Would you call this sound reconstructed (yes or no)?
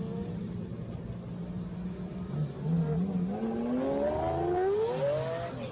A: no